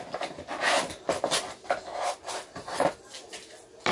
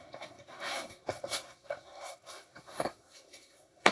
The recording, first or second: first